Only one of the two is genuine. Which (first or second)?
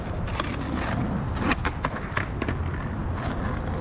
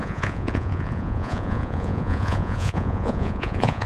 first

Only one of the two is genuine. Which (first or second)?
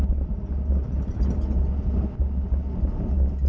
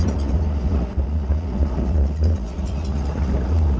first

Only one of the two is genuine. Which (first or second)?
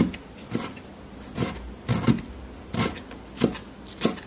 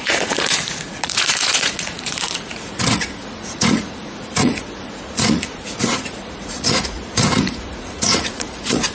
first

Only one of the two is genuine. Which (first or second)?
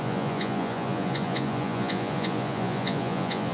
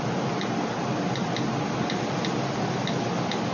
second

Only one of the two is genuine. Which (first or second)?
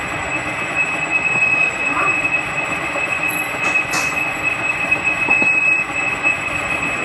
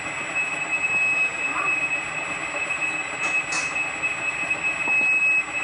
second